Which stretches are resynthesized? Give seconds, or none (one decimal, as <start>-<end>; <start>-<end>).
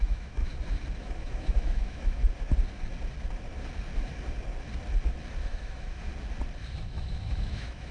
0.0-0.5; 1.0-2.2; 5.4-6.1; 6.7-7.9